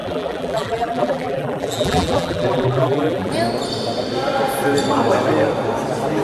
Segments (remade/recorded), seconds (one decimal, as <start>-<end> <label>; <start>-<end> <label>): 0.0-3.3 remade; 3.3-6.2 recorded

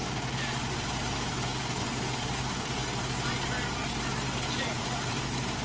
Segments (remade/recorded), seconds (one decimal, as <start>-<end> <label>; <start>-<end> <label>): 0.0-0.7 recorded; 0.7-1.5 remade; 1.5-2.2 recorded; 2.2-2.8 remade; 2.8-5.1 recorded; 5.1-5.6 remade

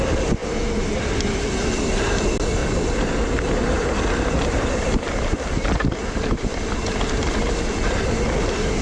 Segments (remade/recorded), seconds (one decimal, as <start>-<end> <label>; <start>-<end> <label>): 0.0-2.6 recorded; 2.6-4.8 remade; 4.8-8.8 recorded

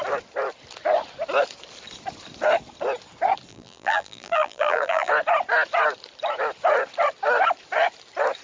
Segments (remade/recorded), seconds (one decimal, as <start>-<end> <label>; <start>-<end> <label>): 0.0-3.5 recorded; 3.5-5.1 remade; 5.1-8.4 recorded

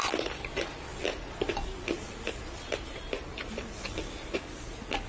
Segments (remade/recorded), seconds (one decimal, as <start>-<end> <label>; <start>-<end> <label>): 0.0-0.9 recorded; 0.9-4.0 remade; 4.0-5.1 recorded

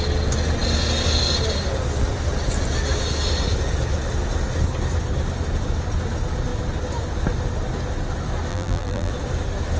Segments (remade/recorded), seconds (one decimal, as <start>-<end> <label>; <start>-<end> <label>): 0.0-8.5 recorded; 8.5-9.1 remade; 9.1-9.8 recorded

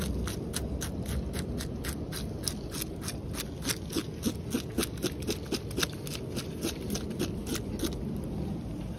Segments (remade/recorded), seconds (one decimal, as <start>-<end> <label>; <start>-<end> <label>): 0.0-9.0 recorded

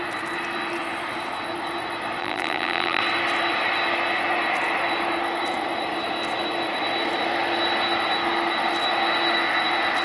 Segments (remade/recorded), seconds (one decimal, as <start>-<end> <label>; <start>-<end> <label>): 0.0-2.2 recorded; 2.2-3.0 remade; 3.0-10.0 recorded